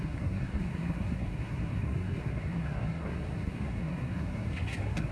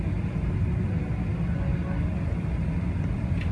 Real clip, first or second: second